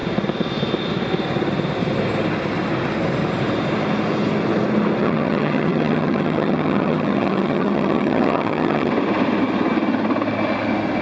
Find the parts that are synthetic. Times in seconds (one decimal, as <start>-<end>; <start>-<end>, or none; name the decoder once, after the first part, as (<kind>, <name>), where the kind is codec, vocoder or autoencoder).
5.0-8.9 (vocoder, HiFi-GAN)